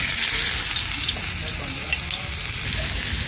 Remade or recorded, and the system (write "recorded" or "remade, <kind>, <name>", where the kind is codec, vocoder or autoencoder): recorded